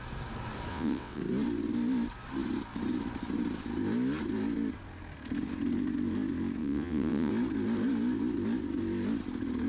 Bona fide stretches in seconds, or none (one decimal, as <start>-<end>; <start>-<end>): 0.0-0.7; 1.2-6.6; 7.3-9.7